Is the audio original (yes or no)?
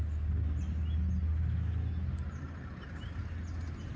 yes